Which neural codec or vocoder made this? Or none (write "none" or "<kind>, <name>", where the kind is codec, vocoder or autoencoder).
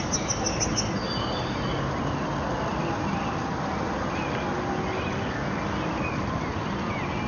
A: none